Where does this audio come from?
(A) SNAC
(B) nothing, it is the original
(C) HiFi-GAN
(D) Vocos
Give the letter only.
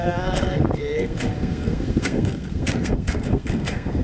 A